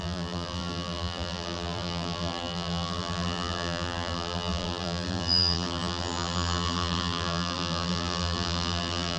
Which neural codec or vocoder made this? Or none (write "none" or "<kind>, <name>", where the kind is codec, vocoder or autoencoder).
vocoder, BigVGAN v2